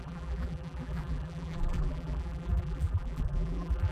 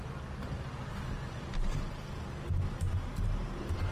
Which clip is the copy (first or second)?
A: first